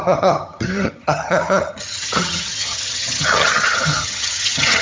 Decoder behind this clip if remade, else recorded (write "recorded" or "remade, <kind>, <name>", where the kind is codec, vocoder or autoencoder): remade, vocoder, HiFi-GAN